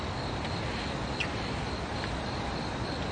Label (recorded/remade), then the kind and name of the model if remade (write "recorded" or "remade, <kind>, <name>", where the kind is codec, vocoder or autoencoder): recorded